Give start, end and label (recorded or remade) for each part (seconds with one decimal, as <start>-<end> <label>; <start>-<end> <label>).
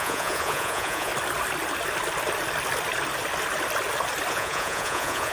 0.0-1.1 remade; 1.1-4.3 recorded; 4.3-5.3 remade